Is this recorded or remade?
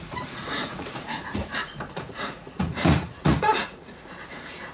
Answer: remade